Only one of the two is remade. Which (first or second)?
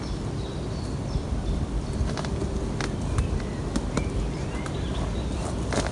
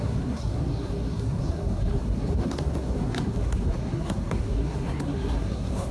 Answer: second